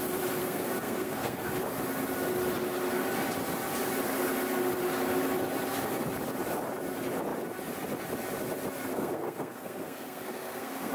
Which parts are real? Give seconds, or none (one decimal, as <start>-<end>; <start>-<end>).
0.0-0.4; 1.5-8.9